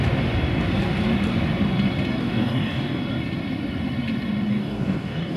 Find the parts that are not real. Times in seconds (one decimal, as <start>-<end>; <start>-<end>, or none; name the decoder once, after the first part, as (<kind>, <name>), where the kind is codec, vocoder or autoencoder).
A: 2.2-3.0 (codec, DAC); 4.5-5.4